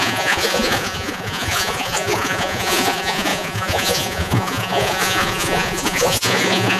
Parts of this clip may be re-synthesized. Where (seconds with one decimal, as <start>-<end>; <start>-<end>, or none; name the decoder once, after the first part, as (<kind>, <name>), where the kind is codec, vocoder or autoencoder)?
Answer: 0.0-6.8 (vocoder, Vocos)

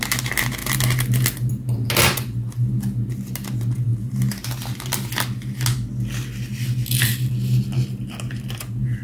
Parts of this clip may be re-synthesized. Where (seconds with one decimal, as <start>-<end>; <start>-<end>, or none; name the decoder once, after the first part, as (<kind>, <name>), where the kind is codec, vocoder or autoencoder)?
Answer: none

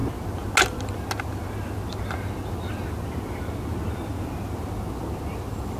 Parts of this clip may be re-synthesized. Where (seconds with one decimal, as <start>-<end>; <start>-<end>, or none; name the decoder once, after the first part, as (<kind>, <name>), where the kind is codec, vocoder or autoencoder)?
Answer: none

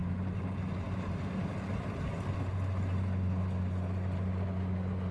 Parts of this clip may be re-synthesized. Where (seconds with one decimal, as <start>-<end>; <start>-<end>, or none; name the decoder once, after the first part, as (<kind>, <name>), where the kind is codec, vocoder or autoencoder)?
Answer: none

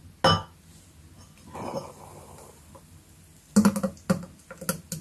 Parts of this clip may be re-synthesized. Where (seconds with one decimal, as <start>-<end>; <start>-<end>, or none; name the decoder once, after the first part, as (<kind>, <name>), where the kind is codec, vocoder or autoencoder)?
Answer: none

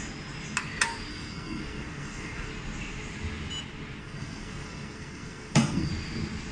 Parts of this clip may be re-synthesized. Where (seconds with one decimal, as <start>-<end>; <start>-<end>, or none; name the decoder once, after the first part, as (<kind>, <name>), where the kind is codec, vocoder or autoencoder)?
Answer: 1.1-2.5 (codec, SNAC); 4.0-5.9